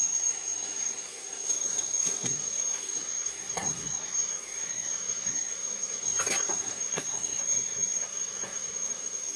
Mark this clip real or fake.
fake